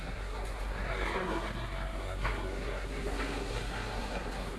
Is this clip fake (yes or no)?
yes